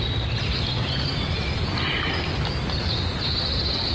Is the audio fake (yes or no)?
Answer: no